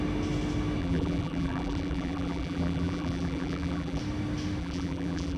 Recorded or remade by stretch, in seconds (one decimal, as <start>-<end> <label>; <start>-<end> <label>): 0.0-0.8 recorded; 0.8-4.0 remade; 4.0-4.6 recorded; 4.6-5.4 remade

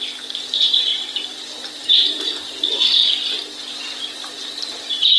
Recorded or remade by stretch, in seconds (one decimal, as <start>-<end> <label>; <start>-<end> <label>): 0.0-3.0 remade; 3.0-3.7 recorded; 3.7-5.2 remade

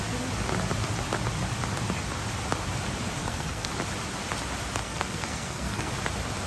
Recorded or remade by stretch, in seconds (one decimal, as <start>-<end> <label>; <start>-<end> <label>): 0.0-3.2 recorded; 3.2-3.7 remade; 3.7-4.8 recorded; 4.8-5.9 remade; 5.9-6.5 recorded